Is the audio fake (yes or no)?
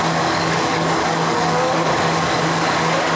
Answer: yes